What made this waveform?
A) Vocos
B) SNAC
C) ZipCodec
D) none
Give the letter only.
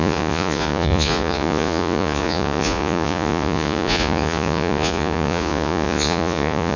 A